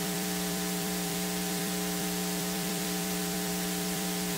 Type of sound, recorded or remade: remade